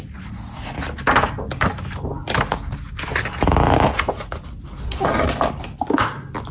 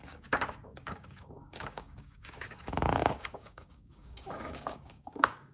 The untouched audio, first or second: first